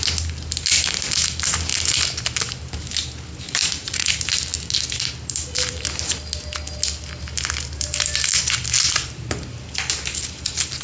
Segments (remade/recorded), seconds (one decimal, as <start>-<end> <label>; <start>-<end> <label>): 0.0-3.6 recorded; 3.6-4.1 remade; 4.1-10.8 recorded